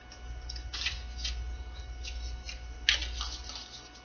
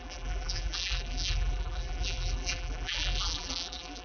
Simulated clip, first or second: second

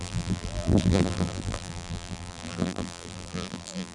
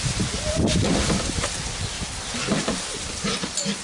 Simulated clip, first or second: first